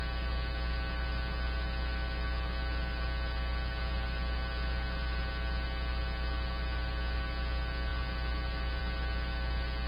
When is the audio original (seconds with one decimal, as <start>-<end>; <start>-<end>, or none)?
0.0-9.9